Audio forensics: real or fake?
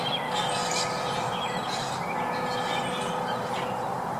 real